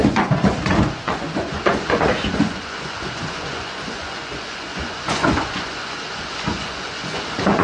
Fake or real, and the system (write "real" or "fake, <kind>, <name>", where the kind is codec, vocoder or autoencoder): fake, vocoder, Vocos